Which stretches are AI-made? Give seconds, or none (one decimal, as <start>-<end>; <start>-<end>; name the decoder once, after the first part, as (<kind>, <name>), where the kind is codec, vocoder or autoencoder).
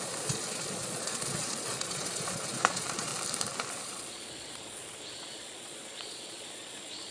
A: 0.0-3.1 (vocoder, Vocos); 3.7-7.1